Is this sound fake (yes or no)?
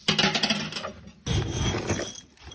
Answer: no